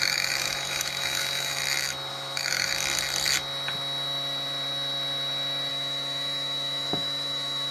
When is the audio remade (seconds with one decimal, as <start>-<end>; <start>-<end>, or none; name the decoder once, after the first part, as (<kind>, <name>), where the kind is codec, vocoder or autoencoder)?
0.0-1.6 (autoencoder, DAC-VAE); 2.1-2.7; 5.7-7.7